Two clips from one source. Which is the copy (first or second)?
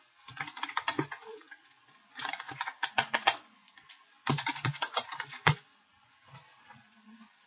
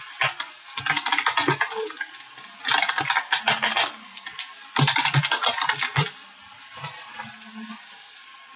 first